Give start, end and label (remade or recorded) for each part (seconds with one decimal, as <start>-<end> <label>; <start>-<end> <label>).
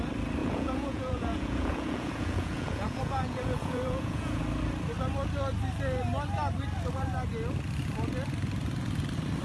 0.0-0.4 recorded; 0.4-4.4 remade; 4.4-9.4 recorded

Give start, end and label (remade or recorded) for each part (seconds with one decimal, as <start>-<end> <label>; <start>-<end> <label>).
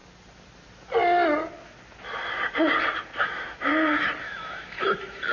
0.0-3.2 recorded; 3.2-3.7 remade; 3.7-4.2 recorded; 4.2-5.3 remade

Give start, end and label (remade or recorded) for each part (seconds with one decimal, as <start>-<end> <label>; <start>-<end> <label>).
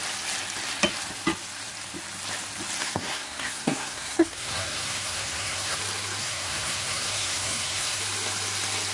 0.0-2.8 recorded; 2.8-5.8 remade; 5.8-6.2 recorded; 6.2-8.0 remade; 8.0-8.9 recorded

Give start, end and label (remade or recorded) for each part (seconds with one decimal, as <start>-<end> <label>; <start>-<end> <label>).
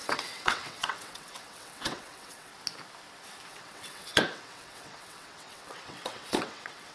0.0-2.5 remade; 2.5-3.5 recorded; 3.5-6.9 remade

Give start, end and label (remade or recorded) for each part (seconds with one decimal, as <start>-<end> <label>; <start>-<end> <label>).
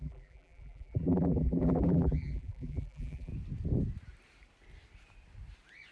0.0-3.3 remade; 3.3-5.9 recorded